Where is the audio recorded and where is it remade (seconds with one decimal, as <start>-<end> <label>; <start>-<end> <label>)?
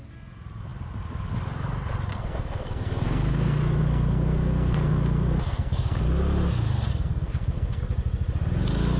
0.0-2.1 recorded; 2.1-6.0 remade; 6.0-6.9 recorded; 6.9-7.8 remade; 7.8-9.0 recorded